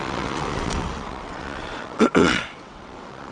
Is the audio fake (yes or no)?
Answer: yes